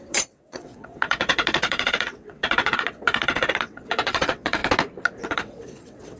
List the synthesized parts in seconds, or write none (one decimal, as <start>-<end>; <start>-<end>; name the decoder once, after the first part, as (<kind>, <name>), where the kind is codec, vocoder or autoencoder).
0.0-4.6 (vocoder, WaveNeXt); 5.2-6.2